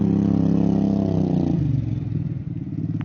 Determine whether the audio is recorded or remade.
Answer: recorded